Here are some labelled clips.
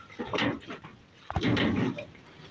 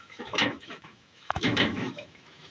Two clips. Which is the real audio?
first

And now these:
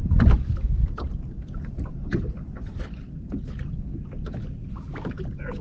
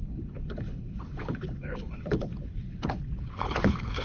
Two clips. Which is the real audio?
first